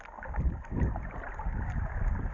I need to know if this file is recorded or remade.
recorded